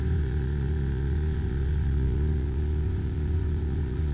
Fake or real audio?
fake